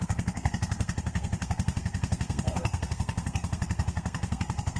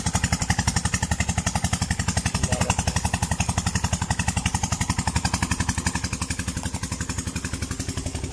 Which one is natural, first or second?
second